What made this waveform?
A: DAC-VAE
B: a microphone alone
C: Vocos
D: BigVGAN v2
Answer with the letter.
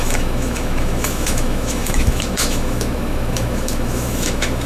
A